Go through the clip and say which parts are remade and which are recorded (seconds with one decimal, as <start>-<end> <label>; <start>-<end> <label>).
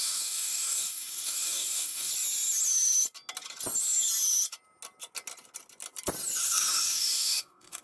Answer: 0.0-2.1 remade; 2.1-6.4 recorded; 6.4-7.8 remade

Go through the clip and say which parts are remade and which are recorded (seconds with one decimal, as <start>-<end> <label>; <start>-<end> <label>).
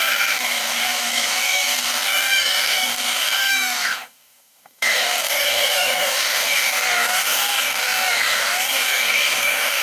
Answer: 0.0-9.8 remade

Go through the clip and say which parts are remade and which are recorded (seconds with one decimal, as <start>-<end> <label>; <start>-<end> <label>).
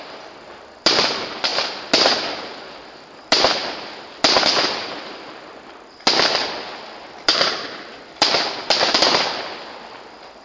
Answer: 0.0-10.4 recorded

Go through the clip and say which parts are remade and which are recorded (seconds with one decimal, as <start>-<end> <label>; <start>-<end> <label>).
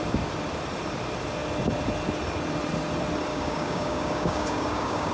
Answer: 0.0-3.3 recorded; 3.3-5.1 remade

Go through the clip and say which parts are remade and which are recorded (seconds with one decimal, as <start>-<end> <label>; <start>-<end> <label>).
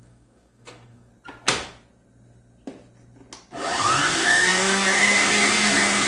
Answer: 0.0-1.1 remade; 1.1-4.0 recorded; 4.0-6.1 remade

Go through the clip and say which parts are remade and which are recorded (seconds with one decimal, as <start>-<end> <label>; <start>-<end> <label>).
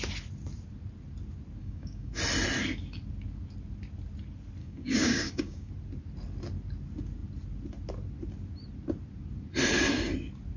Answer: 0.0-1.6 recorded; 1.6-2.1 remade; 2.1-4.6 recorded; 4.6-5.7 remade; 5.7-10.6 recorded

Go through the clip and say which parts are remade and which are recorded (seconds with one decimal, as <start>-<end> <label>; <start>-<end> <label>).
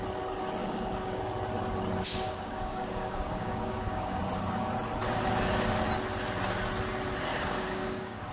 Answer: 0.0-0.6 recorded; 0.6-1.2 remade; 1.2-2.1 recorded; 2.1-4.2 remade; 4.2-7.3 recorded; 7.3-8.3 remade